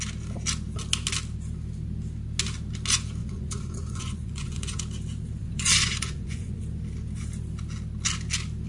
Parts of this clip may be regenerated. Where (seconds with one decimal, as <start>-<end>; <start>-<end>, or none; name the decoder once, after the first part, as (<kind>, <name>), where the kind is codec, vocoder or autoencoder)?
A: 3.2-4.8 (vocoder, Vocos); 5.4-6.6